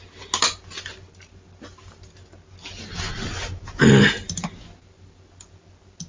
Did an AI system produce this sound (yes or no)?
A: no